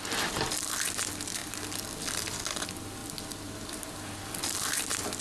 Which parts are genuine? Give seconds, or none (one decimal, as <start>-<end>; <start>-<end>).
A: 0.0-5.2